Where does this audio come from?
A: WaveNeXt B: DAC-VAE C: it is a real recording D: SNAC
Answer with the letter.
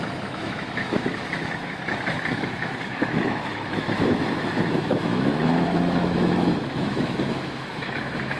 B